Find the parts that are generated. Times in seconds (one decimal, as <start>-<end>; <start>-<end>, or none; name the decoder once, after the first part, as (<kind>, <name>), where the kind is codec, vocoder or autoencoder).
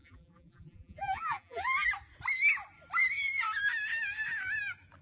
0.0-1.9 (vocoder, BigVGAN v2)